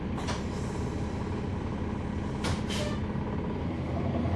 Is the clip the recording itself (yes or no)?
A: yes